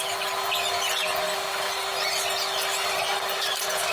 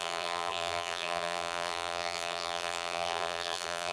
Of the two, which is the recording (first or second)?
first